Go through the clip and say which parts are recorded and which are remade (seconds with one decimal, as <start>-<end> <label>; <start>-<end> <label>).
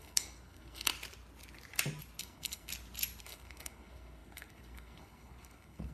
0.0-0.9 remade; 0.9-2.2 recorded; 2.2-2.7 remade; 2.7-3.2 recorded; 3.2-5.9 remade